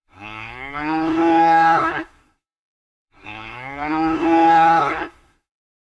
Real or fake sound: fake